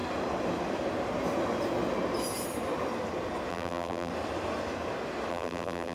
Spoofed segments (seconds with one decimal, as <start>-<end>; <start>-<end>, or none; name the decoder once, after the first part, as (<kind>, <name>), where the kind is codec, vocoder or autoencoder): 3.5-4.1 (vocoder, BigVGAN v2); 5.3-5.9